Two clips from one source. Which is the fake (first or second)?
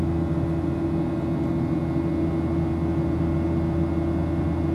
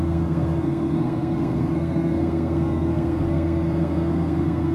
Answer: second